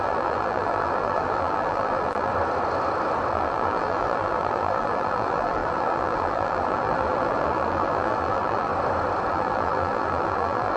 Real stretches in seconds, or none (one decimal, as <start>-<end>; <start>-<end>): 2.3-3.3; 8.7-9.3